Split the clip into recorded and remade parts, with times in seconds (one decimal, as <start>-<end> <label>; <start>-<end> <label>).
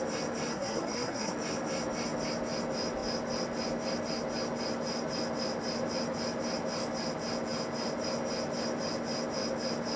0.0-0.5 recorded; 0.5-1.3 remade; 1.3-10.0 recorded